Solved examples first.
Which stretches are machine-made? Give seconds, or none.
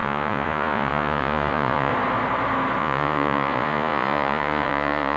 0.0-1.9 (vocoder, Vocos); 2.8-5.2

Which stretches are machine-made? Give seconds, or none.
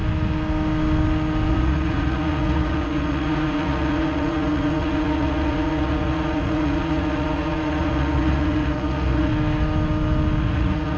1.5-9.3 (vocoder, Vocos); 10.4-11.0